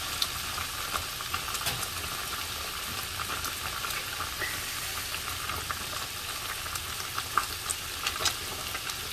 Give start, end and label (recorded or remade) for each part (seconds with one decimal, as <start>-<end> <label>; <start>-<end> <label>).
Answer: 0.0-9.1 recorded